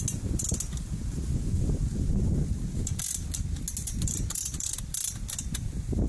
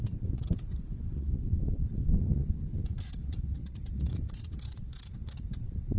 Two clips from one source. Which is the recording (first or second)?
first